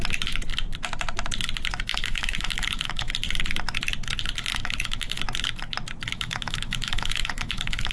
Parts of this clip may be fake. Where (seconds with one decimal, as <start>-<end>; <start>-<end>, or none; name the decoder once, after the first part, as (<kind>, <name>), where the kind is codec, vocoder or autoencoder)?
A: 1.9-3.1 (autoencoder, DAC-VAE); 4.5-5.2; 6.1-7.9